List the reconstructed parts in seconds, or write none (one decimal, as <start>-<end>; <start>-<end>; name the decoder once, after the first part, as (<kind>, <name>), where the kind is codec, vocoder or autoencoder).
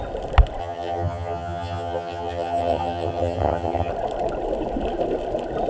0.6-3.9 (vocoder, HiFi-GAN)